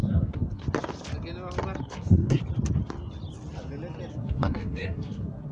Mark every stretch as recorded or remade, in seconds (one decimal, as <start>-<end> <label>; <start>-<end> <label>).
0.0-0.6 remade; 0.6-1.8 recorded; 1.8-2.4 remade; 2.4-4.1 recorded; 4.1-5.5 remade